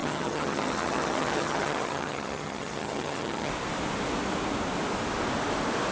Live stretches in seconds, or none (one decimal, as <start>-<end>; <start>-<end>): 3.5-5.9